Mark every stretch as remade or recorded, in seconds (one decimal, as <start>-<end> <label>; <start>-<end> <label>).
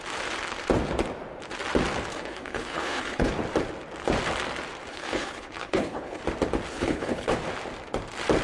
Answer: 0.0-2.1 recorded; 2.1-3.3 remade; 3.3-4.9 recorded; 4.9-6.2 remade; 6.2-6.7 recorded; 6.7-7.3 remade; 7.3-8.4 recorded